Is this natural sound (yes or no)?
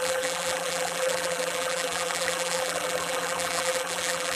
no